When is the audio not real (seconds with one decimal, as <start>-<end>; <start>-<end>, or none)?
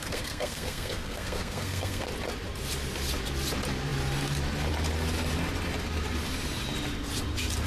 0.0-2.1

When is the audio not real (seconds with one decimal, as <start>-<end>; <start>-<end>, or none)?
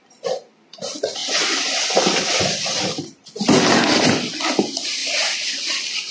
none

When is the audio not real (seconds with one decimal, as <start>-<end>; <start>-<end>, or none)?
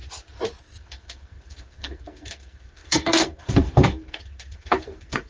0.6-5.3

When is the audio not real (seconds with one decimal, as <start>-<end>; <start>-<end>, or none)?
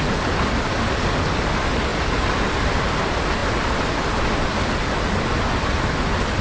none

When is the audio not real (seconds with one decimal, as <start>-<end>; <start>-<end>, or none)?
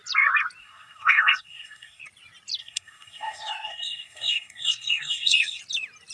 0.6-2.0; 2.6-5.6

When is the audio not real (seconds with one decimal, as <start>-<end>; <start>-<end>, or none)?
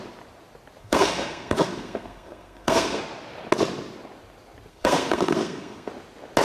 0.8-3.0; 4.7-5.9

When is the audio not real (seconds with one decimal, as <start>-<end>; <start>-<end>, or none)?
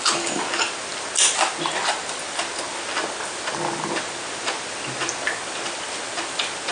none